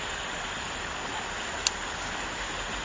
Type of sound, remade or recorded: recorded